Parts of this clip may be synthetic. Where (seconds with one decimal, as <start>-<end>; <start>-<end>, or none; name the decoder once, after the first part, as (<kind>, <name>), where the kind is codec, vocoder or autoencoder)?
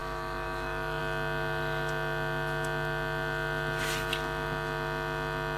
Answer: 0.0-1.0 (autoencoder, DAC-VAE)